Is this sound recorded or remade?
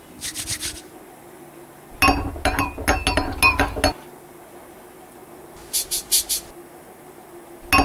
recorded